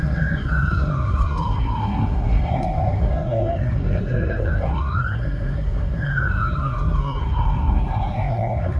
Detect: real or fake fake